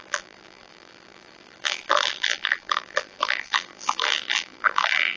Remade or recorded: remade